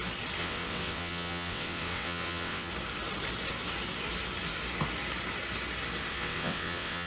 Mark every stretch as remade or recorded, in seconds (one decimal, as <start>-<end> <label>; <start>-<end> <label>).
0.0-0.4 recorded; 0.4-2.7 remade; 2.7-6.1 recorded; 6.1-7.1 remade